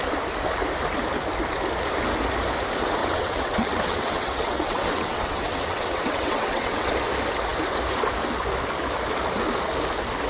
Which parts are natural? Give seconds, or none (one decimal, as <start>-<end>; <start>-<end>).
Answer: 0.0-3.0; 6.9-10.3